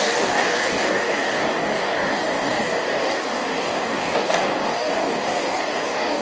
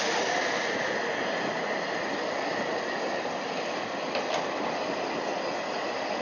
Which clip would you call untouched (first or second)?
second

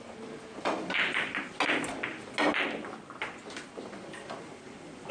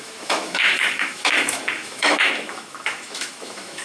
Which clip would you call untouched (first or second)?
first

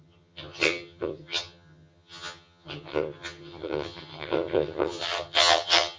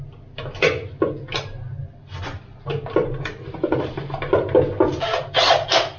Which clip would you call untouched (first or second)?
second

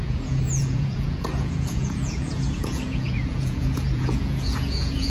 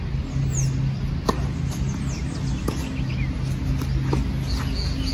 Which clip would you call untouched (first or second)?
second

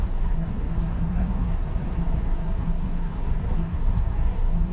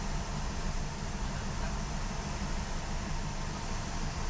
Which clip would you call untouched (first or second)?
second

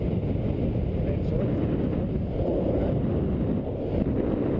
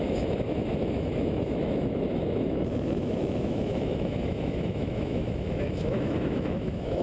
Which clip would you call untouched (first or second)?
first